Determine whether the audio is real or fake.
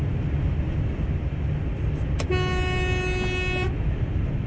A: real